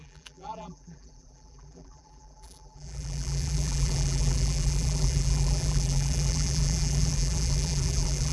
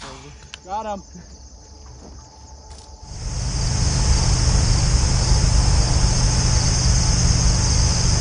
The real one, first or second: second